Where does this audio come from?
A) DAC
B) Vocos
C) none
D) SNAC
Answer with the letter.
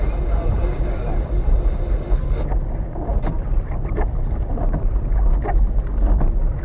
C